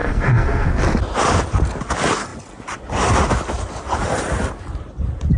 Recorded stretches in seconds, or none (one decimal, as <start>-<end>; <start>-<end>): 0.8-5.4